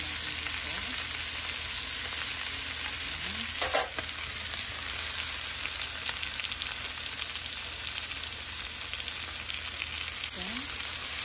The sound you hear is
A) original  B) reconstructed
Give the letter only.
A